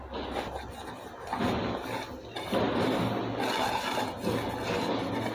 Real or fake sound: real